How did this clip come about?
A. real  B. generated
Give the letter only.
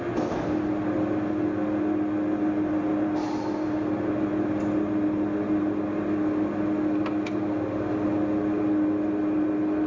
A